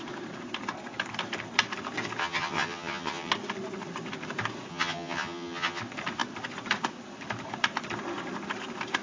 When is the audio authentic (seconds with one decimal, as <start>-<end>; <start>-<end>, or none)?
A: 0.0-2.2; 3.3-4.7; 5.8-9.0